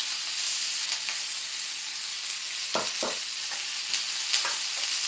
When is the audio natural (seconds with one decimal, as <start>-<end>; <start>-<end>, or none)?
0.0-5.1